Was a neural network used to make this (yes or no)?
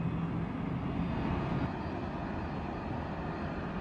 no